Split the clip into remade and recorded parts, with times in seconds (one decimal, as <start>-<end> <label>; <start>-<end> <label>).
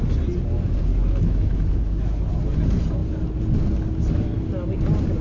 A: 0.0-0.9 recorded; 0.9-1.8 remade; 1.8-5.2 recorded